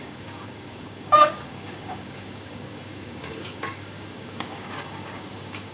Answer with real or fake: fake